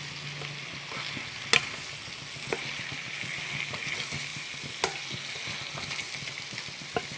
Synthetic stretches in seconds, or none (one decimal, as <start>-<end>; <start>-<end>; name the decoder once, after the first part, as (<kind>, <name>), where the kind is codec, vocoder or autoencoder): none